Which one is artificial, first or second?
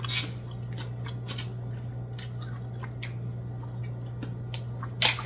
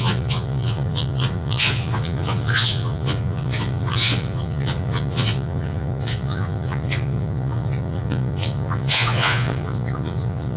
second